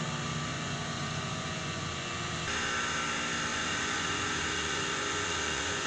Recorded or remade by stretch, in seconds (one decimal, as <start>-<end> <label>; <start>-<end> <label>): 0.0-0.5 recorded; 0.5-2.3 remade; 2.3-3.5 recorded; 3.5-5.9 remade